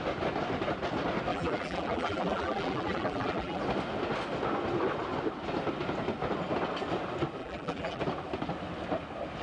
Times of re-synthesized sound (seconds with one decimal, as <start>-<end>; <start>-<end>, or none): 1.3-3.6; 7.4-8.0